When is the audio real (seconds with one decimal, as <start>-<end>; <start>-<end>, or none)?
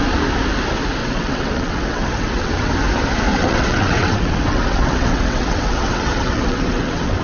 0.0-1.0; 2.7-3.3